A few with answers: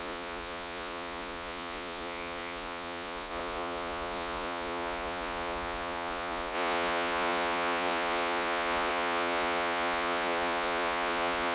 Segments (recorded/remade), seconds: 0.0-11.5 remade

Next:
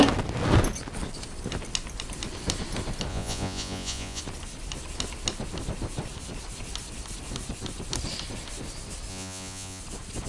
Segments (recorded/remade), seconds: 0.0-3.1 recorded; 3.1-4.2 remade; 4.2-9.1 recorded; 9.1-9.8 remade; 9.8-10.3 recorded

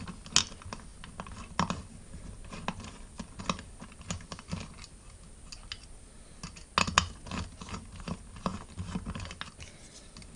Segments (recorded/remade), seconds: 0.0-10.4 recorded